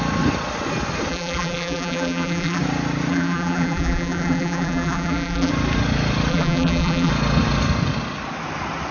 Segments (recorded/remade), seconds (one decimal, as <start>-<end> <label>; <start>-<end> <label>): 0.0-1.1 recorded; 1.1-2.6 remade; 2.6-3.1 recorded; 3.1-5.5 remade; 5.5-6.3 recorded; 6.3-7.1 remade; 7.1-8.9 recorded